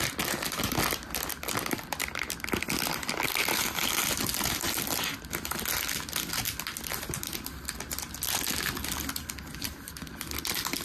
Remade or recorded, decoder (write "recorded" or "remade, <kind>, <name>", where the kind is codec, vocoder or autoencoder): recorded